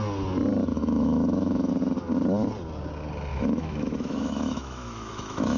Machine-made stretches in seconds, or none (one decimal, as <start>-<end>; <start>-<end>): 0.7-1.7; 3.3-5.6